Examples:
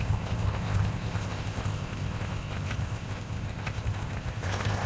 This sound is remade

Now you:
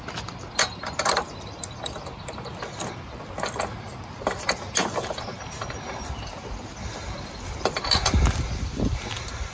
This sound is recorded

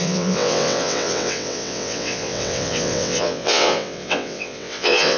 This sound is remade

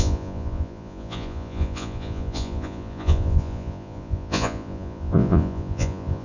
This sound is remade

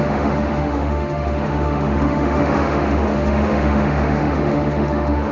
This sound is remade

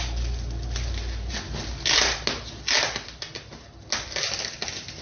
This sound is recorded